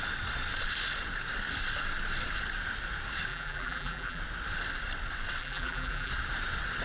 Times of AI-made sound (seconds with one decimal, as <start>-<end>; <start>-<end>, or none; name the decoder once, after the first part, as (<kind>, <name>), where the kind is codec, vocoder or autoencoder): 3.3-4.2 (vocoder, BigVGAN v2); 5.4-6.1